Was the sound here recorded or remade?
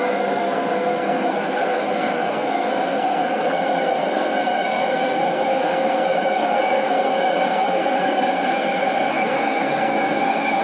remade